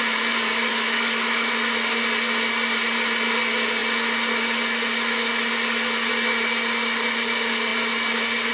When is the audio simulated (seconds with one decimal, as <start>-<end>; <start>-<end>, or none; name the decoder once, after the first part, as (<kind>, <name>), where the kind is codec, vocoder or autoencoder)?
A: 0.7-1.5 (autoencoder, DAC-VAE)